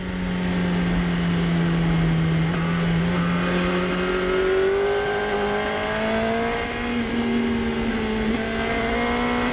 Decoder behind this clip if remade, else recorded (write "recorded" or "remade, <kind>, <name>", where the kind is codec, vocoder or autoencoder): recorded